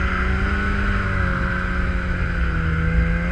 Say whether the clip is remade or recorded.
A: recorded